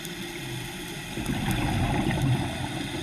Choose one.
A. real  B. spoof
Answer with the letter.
A